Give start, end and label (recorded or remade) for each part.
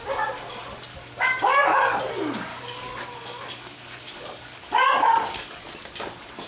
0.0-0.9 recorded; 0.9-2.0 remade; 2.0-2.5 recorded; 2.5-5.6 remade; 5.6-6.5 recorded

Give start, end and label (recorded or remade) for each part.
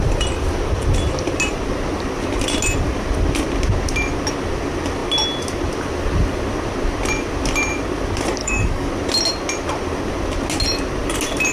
0.0-8.4 recorded; 8.4-8.9 remade; 8.9-11.5 recorded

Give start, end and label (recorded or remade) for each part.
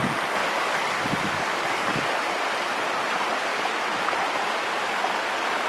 0.0-0.4 recorded; 0.4-2.0 remade; 2.0-5.7 recorded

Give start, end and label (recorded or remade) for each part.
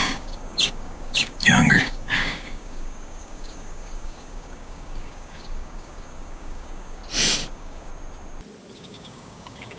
0.0-7.0 remade; 7.0-7.5 recorded; 7.5-7.9 remade; 7.9-8.7 recorded; 8.7-9.8 remade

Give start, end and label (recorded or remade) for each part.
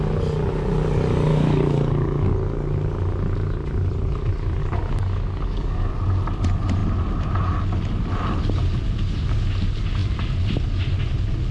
0.0-1.3 recorded; 1.3-2.3 remade; 2.3-4.6 recorded; 4.6-5.9 remade; 5.9-11.5 recorded